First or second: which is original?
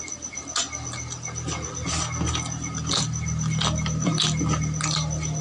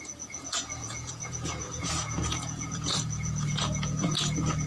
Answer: first